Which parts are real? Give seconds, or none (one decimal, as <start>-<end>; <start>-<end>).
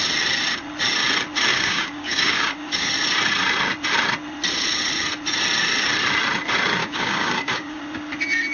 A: 0.0-1.5; 2.9-6.8; 7.8-8.5